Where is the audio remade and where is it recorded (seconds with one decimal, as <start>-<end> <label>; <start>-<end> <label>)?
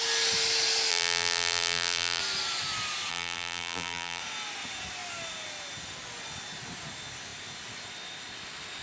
0.0-0.9 recorded; 0.9-2.2 remade; 2.2-3.1 recorded; 3.1-4.2 remade; 4.2-8.8 recorded